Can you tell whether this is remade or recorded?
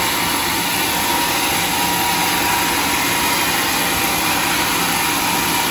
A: recorded